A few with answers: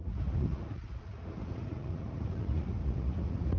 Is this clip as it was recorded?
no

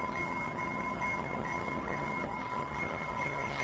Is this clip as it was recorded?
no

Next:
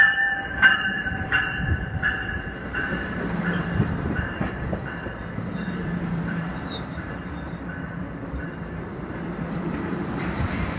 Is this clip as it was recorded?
no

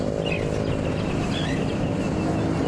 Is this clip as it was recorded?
yes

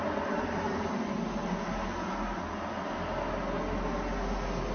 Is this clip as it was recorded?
yes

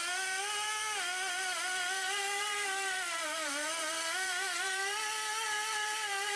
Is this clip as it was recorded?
no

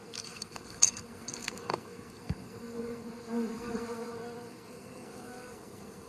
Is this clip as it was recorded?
no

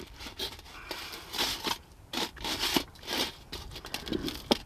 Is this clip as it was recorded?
yes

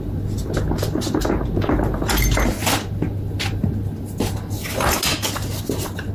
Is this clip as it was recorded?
yes